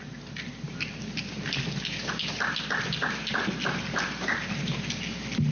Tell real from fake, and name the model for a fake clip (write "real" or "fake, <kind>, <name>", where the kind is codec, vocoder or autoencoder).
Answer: real